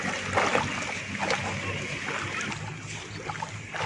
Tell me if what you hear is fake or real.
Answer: real